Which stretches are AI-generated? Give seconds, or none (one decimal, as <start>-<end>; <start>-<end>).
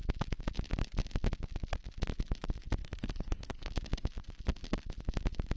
2.8-3.7